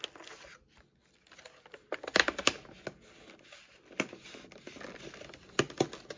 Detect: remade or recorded recorded